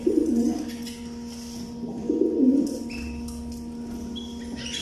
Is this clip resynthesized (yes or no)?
no